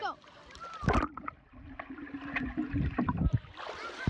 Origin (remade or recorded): remade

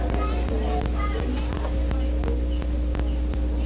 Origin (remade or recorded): recorded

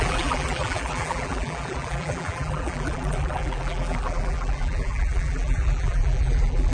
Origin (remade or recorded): remade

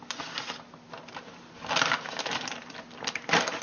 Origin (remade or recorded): recorded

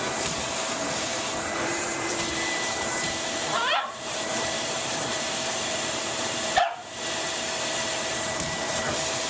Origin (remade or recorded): remade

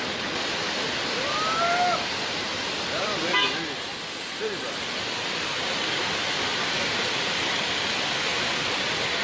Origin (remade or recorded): remade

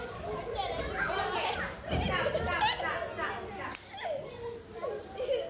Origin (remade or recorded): recorded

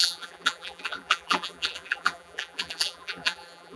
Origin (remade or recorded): remade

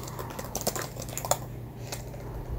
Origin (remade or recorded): recorded